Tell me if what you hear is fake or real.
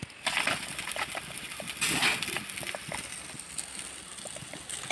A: real